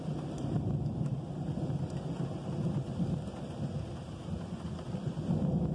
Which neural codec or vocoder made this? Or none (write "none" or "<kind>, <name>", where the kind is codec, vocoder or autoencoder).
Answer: none